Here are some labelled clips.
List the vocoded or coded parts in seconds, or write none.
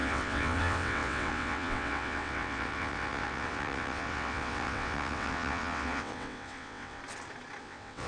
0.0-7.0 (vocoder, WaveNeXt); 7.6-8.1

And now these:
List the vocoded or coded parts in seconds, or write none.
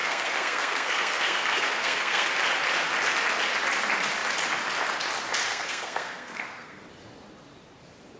0.0-2.3 (codec, SNAC); 5.5-6.8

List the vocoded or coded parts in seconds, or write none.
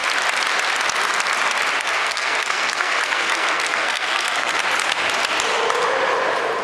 1.8-4.6 (codec, SNAC)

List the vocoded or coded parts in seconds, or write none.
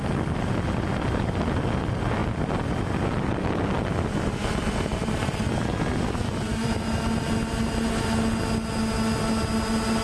4.9-5.4 (vocoder, BigVGAN v2)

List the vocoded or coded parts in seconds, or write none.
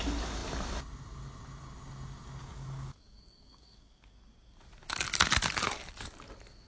2.4-4.1 (codec, DAC)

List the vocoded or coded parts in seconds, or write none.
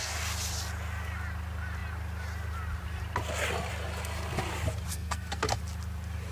4.9-5.6 (codec, SNAC)